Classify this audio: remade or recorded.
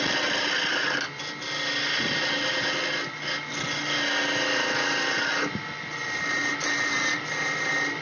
recorded